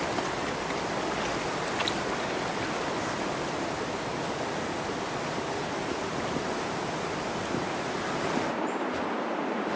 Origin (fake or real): real